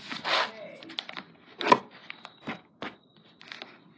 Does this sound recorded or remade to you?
recorded